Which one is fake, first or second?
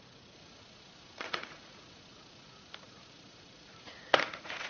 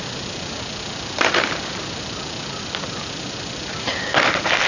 first